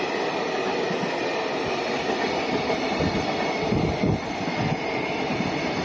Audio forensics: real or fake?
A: real